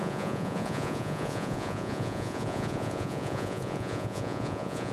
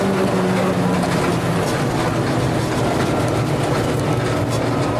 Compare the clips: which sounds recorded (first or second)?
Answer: second